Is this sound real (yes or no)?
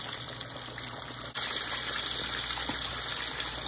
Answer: yes